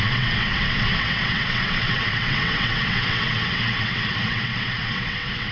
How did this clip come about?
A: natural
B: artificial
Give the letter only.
B